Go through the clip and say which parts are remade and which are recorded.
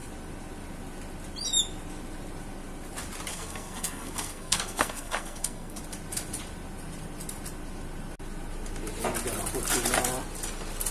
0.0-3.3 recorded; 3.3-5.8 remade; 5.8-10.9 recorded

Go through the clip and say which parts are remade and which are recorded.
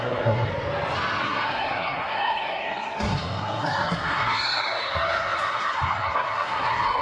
0.0-0.5 remade; 0.5-1.2 recorded; 1.2-7.0 remade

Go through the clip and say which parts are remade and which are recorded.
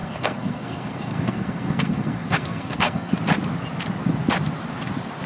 0.0-3.1 remade; 3.1-5.3 recorded